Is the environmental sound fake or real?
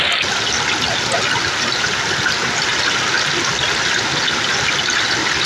real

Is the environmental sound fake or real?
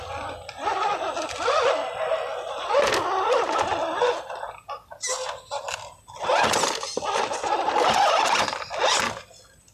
real